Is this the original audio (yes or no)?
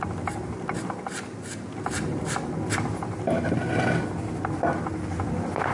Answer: yes